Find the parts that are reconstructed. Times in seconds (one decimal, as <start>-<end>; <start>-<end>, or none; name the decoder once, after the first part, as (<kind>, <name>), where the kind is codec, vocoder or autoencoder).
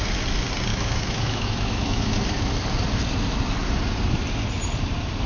0.7-2.1 (autoencoder, DAC-VAE)